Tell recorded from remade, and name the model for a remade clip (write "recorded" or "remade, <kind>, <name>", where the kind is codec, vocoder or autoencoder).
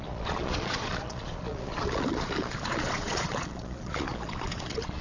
remade, vocoder, Vocos